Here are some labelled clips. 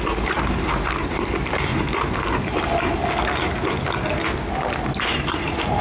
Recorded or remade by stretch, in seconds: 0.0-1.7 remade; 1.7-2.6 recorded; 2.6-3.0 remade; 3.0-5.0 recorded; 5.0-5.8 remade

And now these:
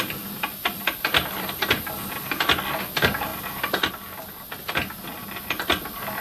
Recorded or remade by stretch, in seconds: 0.0-6.2 remade

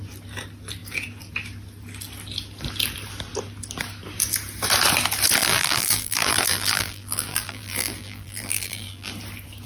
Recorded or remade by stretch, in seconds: 0.0-5.4 recorded; 5.4-9.1 remade; 9.1-9.7 recorded

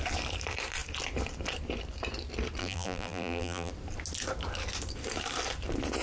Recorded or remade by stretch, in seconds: 0.0-2.6 recorded; 2.6-3.7 remade; 3.7-6.0 recorded

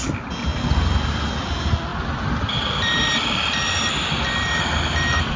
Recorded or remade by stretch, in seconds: 0.0-1.9 recorded; 1.9-5.4 remade

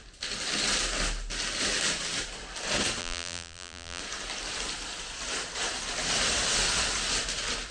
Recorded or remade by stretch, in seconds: 0.0-3.0 recorded; 3.0-4.0 remade; 4.0-7.7 recorded